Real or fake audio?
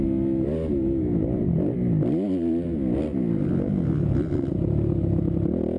real